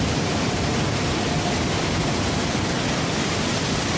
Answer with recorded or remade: recorded